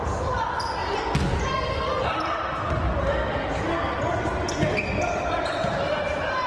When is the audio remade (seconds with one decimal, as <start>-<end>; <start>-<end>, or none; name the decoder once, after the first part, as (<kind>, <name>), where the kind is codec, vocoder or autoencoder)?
0.0-0.8 (vocoder, BigVGAN v2); 2.8-3.5; 5.7-6.5